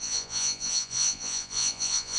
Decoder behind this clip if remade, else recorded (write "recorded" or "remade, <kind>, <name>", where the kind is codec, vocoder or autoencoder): remade, vocoder, Vocos